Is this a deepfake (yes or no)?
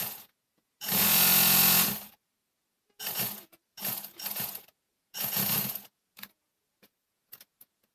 yes